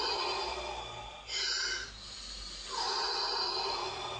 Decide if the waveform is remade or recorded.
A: recorded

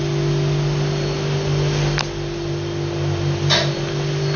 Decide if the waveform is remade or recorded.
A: recorded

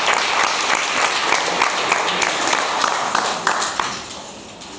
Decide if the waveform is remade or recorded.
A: recorded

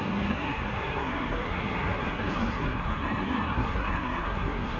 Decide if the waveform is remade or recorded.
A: remade